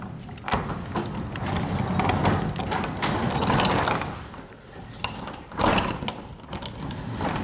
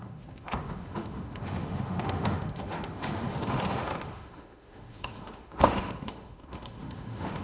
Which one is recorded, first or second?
first